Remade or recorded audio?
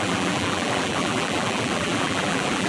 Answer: remade